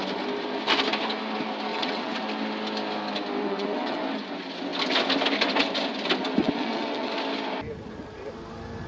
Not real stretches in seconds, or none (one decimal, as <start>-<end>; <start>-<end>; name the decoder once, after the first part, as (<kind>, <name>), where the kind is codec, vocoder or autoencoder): 1.7-2.2 (vocoder, WaveNeXt); 3.4-4.0; 6.4-7.1